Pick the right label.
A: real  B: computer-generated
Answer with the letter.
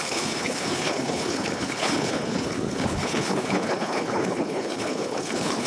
B